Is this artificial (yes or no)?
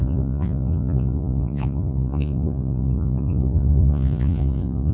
yes